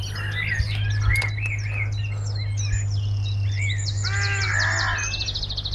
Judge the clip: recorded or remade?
recorded